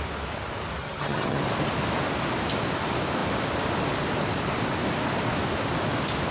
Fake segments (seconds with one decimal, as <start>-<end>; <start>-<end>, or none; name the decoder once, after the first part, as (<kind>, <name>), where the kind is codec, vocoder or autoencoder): 0.8-1.4 (vocoder, HiFi-GAN)